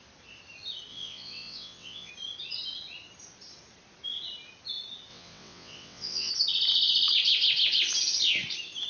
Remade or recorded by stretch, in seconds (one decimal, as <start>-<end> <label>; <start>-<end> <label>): 0.0-0.9 recorded; 0.9-2.1 remade; 2.1-5.1 recorded; 5.1-6.3 remade; 6.3-8.9 recorded